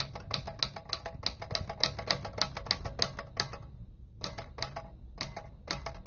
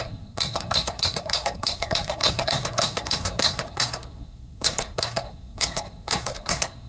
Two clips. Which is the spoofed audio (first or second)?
second